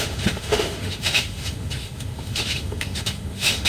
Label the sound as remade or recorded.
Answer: remade